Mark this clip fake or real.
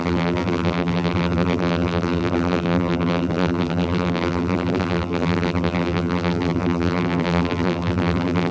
fake